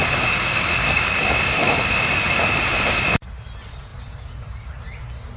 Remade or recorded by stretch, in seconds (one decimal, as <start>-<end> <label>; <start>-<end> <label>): 0.0-0.8 recorded; 0.8-1.7 remade; 1.7-5.4 recorded